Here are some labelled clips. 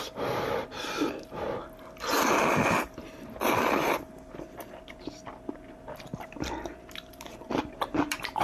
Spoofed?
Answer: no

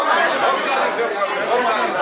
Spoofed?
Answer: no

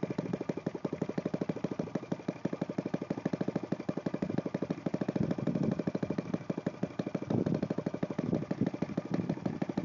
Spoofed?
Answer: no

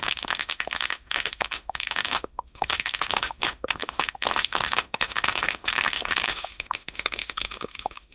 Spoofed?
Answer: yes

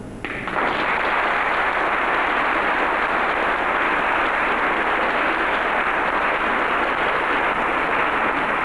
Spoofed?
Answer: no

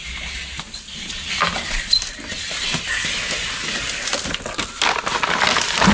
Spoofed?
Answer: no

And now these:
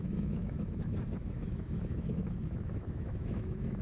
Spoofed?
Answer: yes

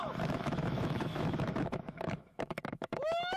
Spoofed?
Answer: yes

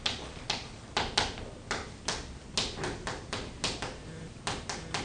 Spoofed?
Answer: no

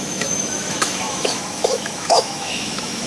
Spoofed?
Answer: yes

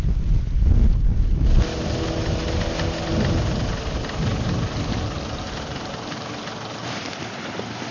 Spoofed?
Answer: no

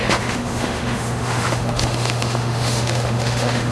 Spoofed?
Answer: yes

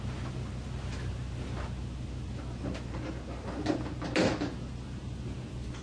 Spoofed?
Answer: no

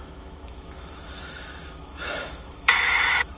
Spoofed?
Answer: yes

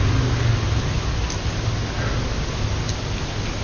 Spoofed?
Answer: no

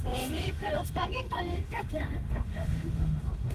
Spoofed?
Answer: yes